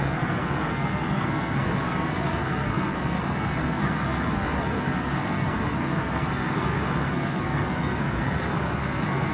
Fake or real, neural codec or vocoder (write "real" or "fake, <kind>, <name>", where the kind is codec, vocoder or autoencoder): fake, codec, SNAC